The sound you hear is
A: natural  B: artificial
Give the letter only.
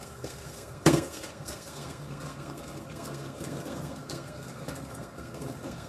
B